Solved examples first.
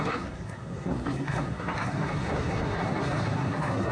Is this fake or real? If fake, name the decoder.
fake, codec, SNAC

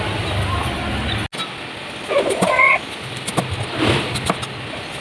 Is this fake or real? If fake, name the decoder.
real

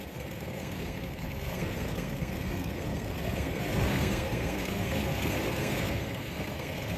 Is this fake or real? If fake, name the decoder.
fake, codec, SNAC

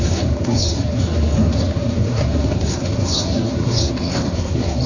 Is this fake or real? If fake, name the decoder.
fake, codec, SNAC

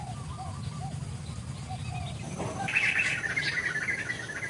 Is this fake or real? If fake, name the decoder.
real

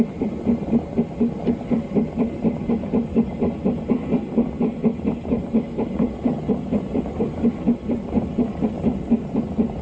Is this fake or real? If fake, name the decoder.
real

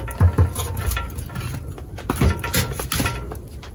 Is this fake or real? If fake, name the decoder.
real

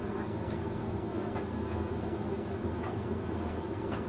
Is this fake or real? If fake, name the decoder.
fake, codec, SNAC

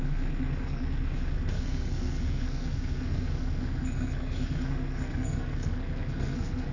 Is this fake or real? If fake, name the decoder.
fake, codec, SNAC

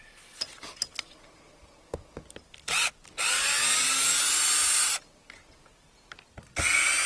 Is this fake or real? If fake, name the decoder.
real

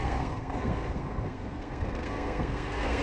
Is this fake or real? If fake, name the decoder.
fake, codec, SNAC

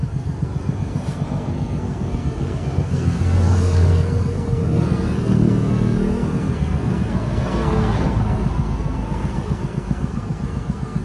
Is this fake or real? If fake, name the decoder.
fake, codec, SNAC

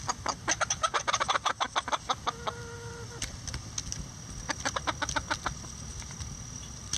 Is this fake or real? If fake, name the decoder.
real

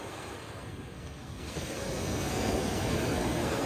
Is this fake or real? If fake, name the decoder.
fake, codec, SNAC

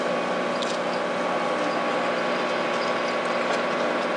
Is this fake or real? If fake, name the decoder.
real